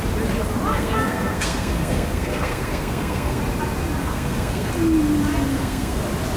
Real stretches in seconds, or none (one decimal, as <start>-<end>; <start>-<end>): 0.0-0.7; 3.4-4.0; 4.7-5.5; 6.0-6.4